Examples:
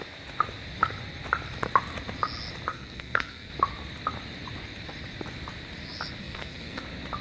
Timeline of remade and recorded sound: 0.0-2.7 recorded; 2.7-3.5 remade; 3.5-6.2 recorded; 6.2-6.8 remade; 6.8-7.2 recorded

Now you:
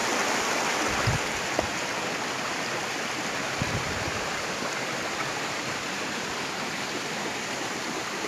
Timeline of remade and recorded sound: 0.0-8.3 recorded

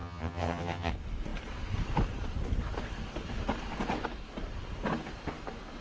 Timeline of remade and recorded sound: 0.0-0.9 remade; 0.9-5.8 recorded

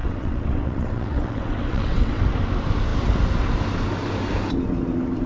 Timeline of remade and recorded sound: 0.0-2.2 remade; 2.2-5.3 recorded